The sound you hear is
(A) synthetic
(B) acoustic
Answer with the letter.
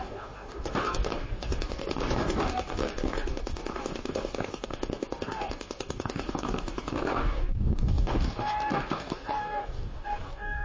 A